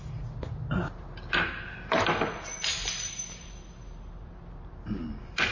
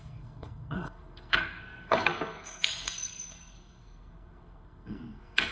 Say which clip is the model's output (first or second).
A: second